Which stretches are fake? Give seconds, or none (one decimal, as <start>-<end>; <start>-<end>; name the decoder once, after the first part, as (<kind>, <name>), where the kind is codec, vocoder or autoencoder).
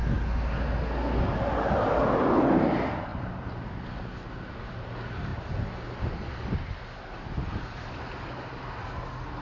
none